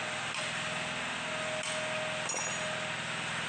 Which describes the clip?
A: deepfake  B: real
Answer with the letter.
B